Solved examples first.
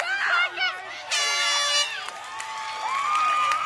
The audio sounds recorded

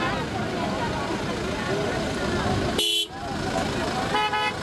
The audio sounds recorded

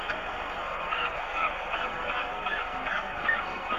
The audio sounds remade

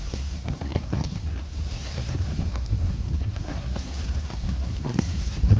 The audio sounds remade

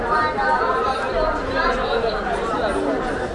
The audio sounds recorded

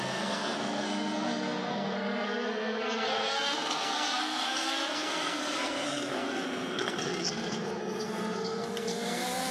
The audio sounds remade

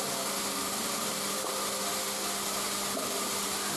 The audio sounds recorded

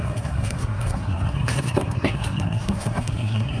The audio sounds remade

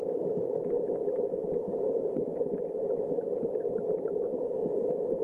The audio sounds recorded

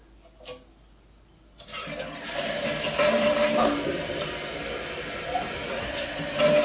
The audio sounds recorded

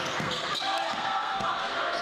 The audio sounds remade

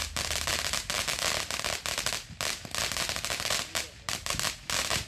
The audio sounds recorded